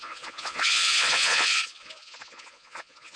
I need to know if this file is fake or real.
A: fake